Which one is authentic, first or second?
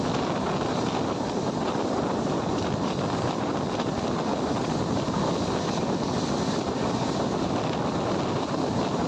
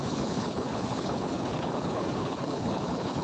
first